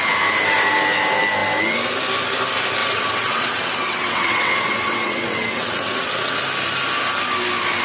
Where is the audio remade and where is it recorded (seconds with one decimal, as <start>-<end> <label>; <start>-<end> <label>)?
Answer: 0.0-2.8 recorded; 2.8-6.4 remade; 6.4-7.8 recorded